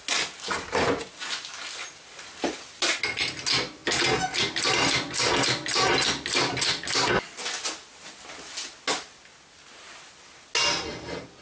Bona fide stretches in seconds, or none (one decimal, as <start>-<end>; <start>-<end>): 0.0-11.4